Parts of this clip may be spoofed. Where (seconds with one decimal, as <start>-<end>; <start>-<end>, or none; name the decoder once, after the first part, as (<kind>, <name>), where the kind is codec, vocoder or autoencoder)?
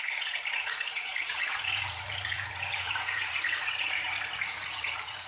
0.0-5.3 (vocoder, Vocos)